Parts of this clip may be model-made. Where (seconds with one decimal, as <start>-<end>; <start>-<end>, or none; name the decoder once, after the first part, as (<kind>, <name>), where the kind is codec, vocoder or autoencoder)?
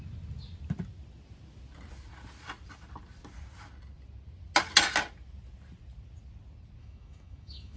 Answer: 6.8-7.8 (autoencoder, DAC-VAE)